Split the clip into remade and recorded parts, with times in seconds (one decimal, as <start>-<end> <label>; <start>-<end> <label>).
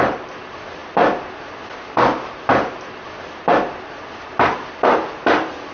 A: 0.0-5.7 recorded